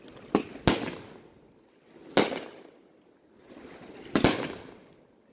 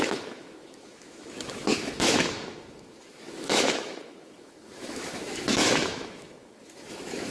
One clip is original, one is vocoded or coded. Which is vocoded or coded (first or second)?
second